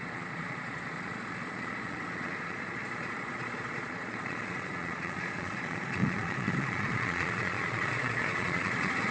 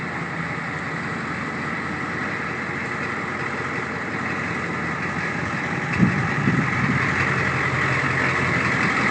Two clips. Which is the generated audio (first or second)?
first